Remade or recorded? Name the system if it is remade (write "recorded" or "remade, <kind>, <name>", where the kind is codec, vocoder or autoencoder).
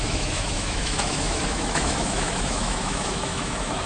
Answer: remade, autoencoder, DAC-VAE